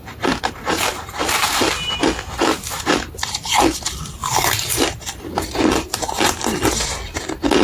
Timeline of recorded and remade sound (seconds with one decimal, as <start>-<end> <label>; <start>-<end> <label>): 0.0-1.4 remade; 1.4-2.5 recorded; 2.5-3.8 remade; 3.8-4.2 recorded; 4.2-6.4 remade; 6.4-7.6 recorded